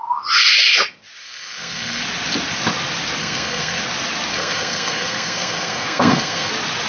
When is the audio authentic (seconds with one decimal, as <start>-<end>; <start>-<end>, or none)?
0.0-1.2; 2.0-3.2; 3.8-4.3; 6.5-6.9